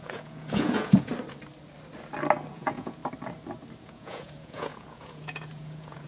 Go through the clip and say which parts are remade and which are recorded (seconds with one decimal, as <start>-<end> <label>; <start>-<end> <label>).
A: 0.0-1.1 remade; 1.1-2.5 recorded; 2.5-3.0 remade; 3.0-3.8 recorded; 3.8-6.1 remade